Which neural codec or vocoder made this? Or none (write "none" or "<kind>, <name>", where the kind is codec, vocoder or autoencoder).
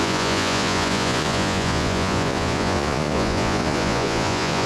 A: vocoder, Vocos